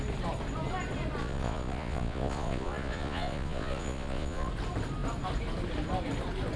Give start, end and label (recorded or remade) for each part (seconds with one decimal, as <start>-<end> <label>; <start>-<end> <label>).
0.0-1.2 recorded; 1.2-4.5 remade; 4.5-6.6 recorded